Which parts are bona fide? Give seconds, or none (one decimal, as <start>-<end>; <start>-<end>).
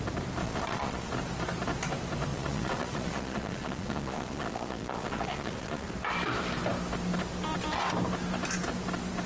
0.0-0.4; 1.1-2.3; 5.9-9.3